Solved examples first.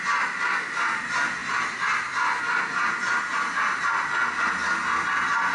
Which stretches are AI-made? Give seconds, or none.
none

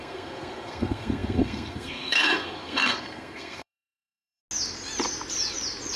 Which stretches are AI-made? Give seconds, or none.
0.0-4.4 (codec, SNAC)

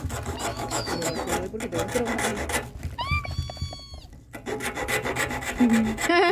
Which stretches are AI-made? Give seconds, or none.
0.5-1.1 (autoencoder, DAC-VAE)

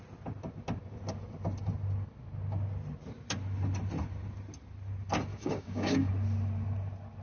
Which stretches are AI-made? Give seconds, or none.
5.3-6.1 (codec, DAC)

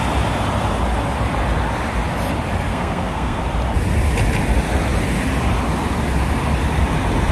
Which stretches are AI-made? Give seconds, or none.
2.7-3.4 (codec, SNAC)

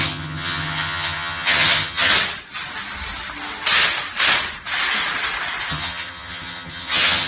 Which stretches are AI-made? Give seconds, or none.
0.0-2.1 (vocoder, HiFi-GAN); 5.7-7.3